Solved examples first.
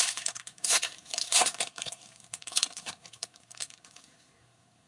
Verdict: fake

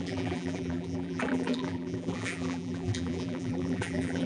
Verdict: fake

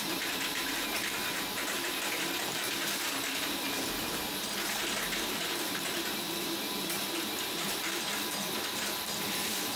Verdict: fake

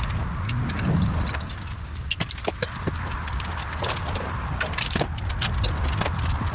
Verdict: real